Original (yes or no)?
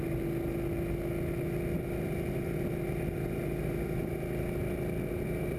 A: yes